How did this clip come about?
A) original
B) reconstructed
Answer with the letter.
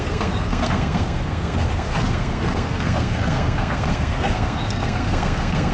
B